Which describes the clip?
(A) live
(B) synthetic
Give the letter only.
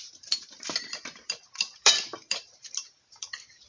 B